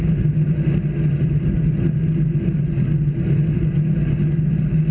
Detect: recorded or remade recorded